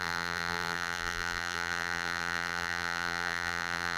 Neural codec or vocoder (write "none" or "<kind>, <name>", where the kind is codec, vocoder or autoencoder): vocoder, BigVGAN v2